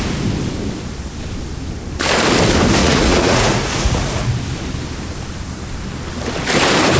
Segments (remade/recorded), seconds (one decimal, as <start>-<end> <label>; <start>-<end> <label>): 0.0-2.8 recorded; 2.8-4.3 remade; 4.3-7.0 recorded